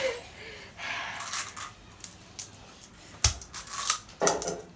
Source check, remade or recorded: recorded